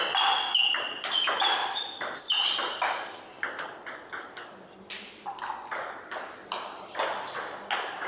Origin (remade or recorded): recorded